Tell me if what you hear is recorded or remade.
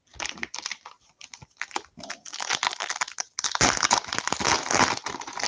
recorded